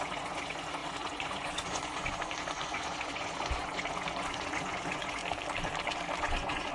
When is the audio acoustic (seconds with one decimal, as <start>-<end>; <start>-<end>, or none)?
5.2-6.2